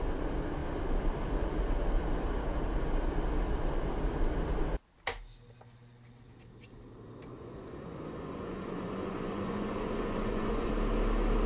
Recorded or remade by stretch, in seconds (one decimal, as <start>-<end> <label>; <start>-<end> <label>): 0.0-7.4 recorded; 7.4-10.7 remade; 10.7-11.5 recorded